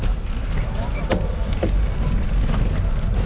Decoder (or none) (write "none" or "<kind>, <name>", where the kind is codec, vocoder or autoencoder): none